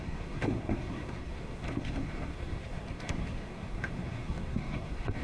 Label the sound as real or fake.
fake